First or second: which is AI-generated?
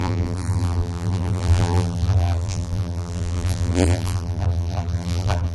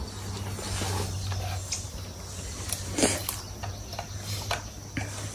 first